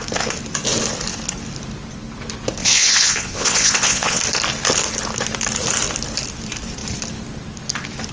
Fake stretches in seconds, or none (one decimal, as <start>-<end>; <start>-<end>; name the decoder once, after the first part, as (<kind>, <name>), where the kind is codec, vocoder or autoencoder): 2.6-4.2 (vocoder, WaveNeXt)